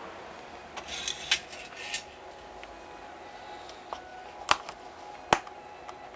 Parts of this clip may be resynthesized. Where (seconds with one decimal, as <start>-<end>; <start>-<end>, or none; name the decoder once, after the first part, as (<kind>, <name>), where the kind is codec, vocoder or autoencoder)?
none

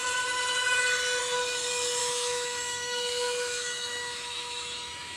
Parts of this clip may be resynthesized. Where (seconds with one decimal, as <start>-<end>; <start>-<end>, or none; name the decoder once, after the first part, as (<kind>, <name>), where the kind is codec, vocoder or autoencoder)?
2.0-5.2 (autoencoder, DAC-VAE)

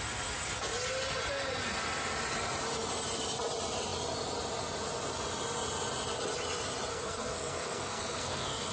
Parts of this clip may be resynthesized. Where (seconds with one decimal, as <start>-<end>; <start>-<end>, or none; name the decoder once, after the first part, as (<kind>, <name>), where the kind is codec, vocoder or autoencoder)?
6.9-8.7 (codec, SNAC)